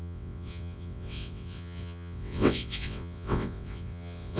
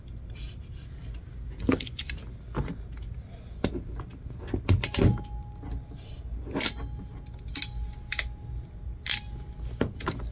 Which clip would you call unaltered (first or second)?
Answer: second